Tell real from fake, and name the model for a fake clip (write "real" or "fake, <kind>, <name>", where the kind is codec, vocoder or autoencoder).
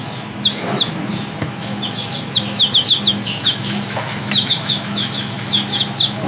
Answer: fake, autoencoder, DAC-VAE